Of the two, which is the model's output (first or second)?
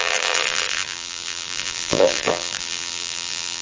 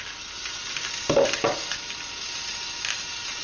first